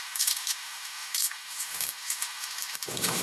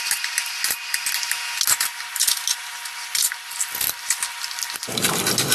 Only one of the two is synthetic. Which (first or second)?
first